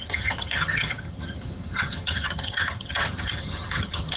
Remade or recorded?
remade